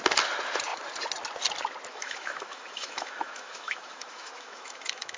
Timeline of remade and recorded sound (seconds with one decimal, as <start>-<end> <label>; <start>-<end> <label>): 0.0-1.9 recorded; 1.9-5.2 remade